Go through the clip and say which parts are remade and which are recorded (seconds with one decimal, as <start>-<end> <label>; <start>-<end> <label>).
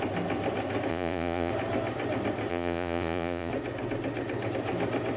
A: 0.0-0.9 recorded; 0.9-1.5 remade; 1.5-2.5 recorded; 2.5-3.5 remade; 3.5-5.2 recorded